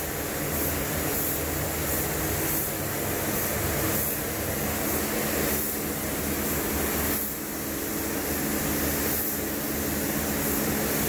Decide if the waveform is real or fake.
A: real